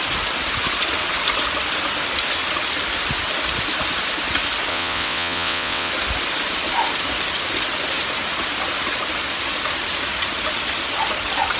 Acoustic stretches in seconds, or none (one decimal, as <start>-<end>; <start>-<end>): 0.0-4.7; 5.9-11.6